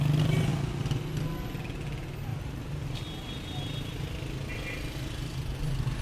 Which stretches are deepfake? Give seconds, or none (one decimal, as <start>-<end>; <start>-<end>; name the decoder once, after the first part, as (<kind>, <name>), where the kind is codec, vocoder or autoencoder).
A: 2.3-2.8 (vocoder, BigVGAN v2)